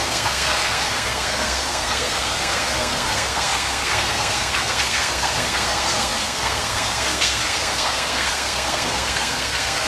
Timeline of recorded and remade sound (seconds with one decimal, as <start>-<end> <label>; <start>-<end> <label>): 0.0-9.9 remade